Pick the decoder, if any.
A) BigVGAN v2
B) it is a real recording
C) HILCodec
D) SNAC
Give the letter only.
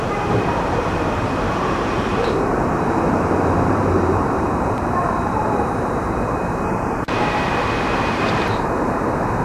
A